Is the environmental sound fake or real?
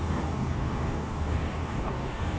fake